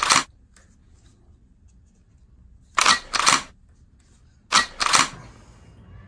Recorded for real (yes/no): yes